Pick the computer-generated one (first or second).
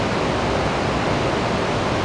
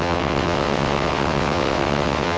second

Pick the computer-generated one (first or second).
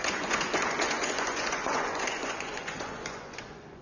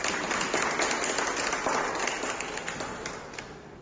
first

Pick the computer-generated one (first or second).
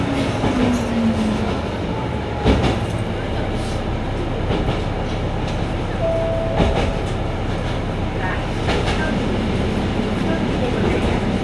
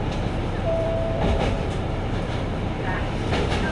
second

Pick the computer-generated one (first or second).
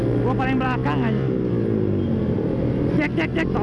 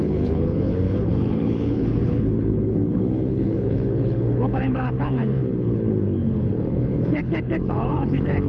second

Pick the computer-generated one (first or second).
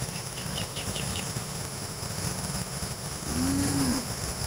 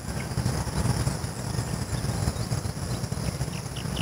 first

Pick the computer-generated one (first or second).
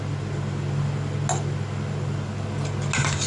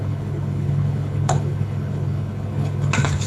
second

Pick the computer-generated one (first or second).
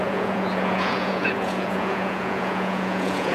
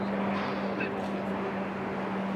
first